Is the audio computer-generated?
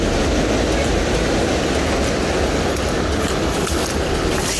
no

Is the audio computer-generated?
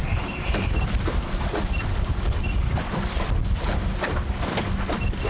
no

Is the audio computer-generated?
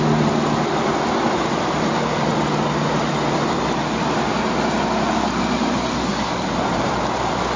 no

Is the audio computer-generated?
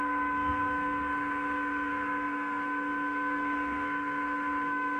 yes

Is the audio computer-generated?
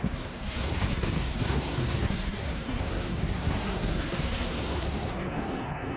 yes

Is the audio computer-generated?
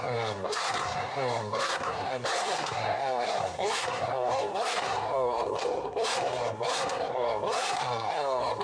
yes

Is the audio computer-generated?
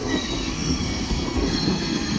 yes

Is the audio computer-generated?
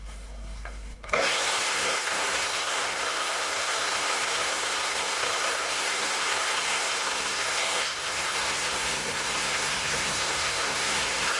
yes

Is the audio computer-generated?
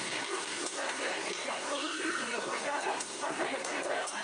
yes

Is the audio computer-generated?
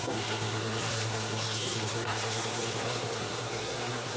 yes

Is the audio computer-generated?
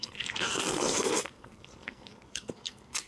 yes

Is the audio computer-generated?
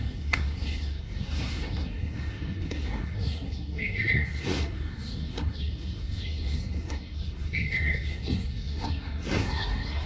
yes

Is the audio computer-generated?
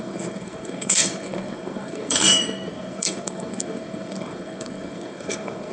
yes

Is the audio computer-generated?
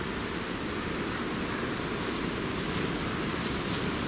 no